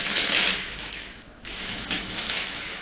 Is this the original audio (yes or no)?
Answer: no